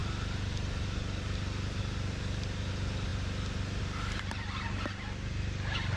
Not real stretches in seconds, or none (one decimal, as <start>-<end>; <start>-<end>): none